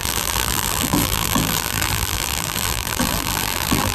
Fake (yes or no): yes